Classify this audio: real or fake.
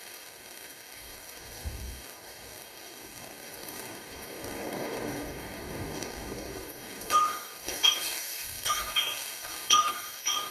fake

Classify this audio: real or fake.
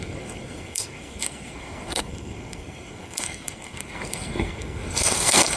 fake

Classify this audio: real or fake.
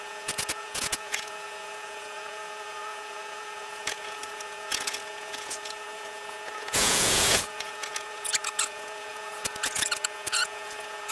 fake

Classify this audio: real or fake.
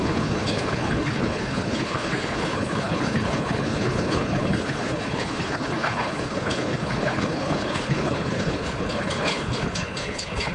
fake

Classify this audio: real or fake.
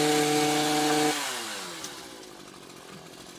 real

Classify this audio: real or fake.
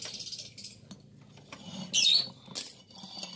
real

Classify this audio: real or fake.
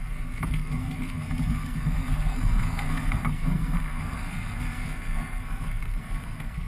fake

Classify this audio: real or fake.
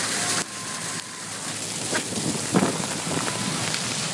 real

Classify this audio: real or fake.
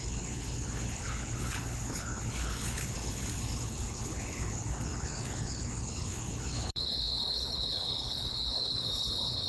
fake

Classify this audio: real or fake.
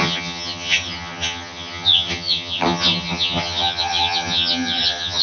fake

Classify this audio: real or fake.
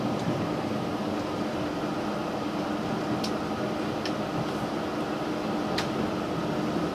real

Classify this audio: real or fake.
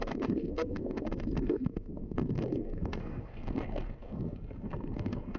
fake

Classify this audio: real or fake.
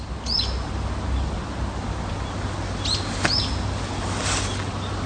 real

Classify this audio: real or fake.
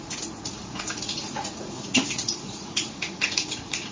fake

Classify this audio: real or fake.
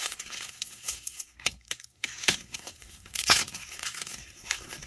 fake